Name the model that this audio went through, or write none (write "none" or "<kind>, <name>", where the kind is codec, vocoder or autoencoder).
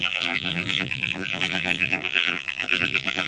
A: vocoder, BigVGAN v2